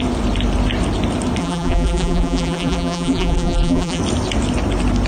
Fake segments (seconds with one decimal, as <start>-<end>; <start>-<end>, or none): 1.4-4.0